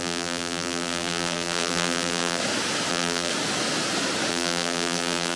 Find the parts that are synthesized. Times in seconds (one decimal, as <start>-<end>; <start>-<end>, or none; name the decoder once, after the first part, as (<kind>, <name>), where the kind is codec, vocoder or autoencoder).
0.0-2.4 (vocoder, BigVGAN v2); 2.9-3.3; 4.3-5.4